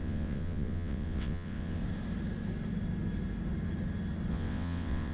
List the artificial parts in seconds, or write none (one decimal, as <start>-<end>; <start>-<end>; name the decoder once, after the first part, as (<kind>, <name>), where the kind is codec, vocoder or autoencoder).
0.0-1.8 (vocoder, WaveNeXt); 4.3-5.1